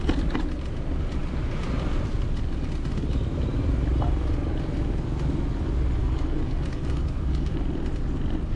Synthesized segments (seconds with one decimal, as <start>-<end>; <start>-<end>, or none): 6.0-7.6